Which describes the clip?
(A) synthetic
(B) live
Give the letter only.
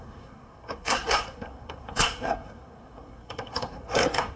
A